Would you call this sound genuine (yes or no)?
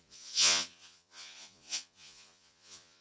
no